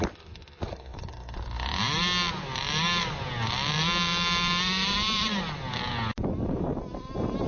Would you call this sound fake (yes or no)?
no